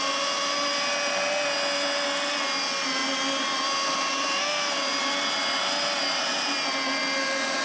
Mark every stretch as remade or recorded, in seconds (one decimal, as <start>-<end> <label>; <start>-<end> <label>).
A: 0.0-7.6 recorded